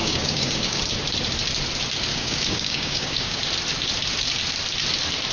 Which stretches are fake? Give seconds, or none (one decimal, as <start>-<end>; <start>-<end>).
0.0-0.8; 2.1-3.4